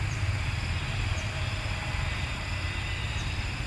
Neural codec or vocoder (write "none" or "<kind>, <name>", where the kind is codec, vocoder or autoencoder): none